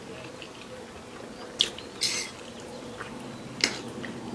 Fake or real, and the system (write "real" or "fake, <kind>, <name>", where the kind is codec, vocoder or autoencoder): real